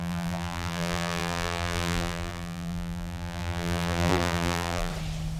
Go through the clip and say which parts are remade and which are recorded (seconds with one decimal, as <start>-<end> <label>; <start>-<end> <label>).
0.0-4.9 remade; 4.9-5.4 recorded